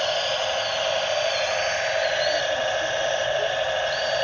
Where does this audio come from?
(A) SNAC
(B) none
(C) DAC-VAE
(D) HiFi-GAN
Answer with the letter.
B